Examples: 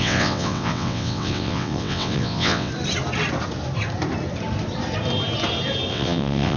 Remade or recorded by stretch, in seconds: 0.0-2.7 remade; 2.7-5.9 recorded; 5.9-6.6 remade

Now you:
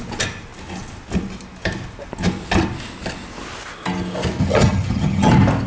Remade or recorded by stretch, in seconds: 0.0-4.4 recorded; 4.4-5.3 remade; 5.3-5.7 recorded

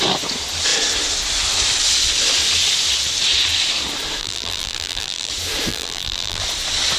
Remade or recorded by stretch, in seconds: 0.0-4.2 recorded; 4.2-5.3 remade; 5.3-5.7 recorded; 5.7-6.4 remade; 6.4-7.0 recorded

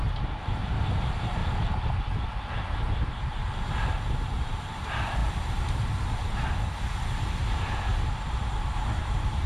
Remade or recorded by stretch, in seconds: 0.0-1.4 remade; 1.4-2.5 recorded; 2.5-3.4 remade; 3.4-4.0 recorded; 4.0-7.9 remade; 7.9-9.0 recorded; 9.0-9.5 remade

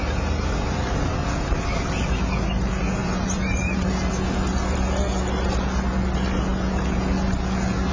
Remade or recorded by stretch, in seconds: 0.0-3.0 recorded; 3.0-3.9 remade; 3.9-7.9 recorded

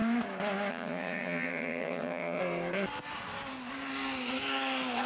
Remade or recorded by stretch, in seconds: 0.0-0.7 recorded; 0.7-2.4 remade; 2.4-5.1 recorded

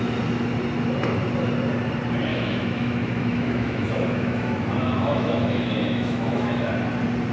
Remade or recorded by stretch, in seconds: 0.0-2.3 recorded; 2.3-6.7 remade; 6.7-7.3 recorded